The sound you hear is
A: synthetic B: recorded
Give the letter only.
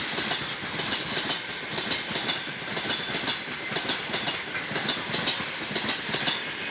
B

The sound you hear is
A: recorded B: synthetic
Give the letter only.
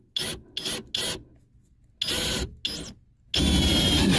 A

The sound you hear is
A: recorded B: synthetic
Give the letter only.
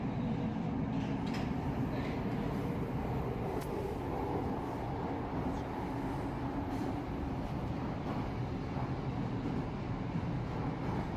A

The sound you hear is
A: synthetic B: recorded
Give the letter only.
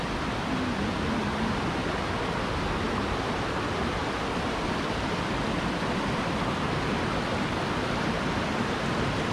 B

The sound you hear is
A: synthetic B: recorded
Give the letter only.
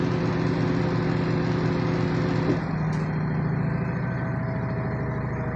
B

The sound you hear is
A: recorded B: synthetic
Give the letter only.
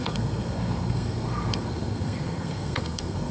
B